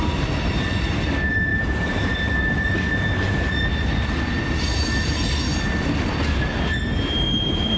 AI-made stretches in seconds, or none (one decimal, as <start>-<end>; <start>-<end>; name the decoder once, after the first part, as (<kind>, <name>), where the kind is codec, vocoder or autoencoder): 1.5-2.3 (vocoder, BigVGAN v2)